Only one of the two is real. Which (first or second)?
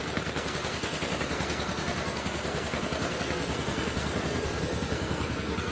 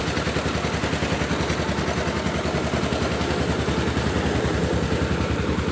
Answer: second